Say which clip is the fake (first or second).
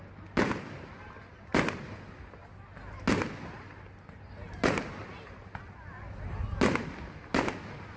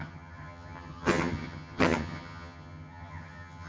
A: second